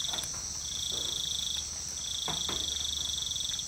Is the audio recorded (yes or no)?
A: yes